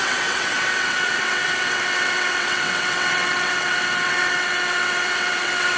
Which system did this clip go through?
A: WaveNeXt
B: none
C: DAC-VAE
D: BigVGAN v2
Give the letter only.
A